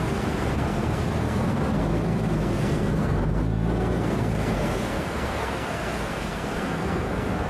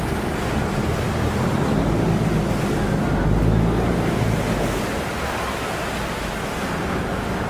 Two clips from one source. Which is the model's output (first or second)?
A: first